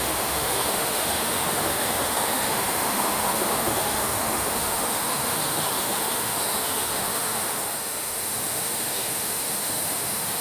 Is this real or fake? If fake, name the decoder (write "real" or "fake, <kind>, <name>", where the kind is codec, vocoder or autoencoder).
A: fake, autoencoder, DAC-VAE